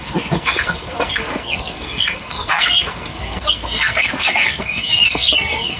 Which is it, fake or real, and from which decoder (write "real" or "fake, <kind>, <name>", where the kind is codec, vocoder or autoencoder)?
fake, codec, SNAC